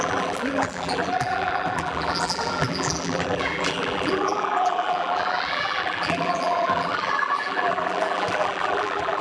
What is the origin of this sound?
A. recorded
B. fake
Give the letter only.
B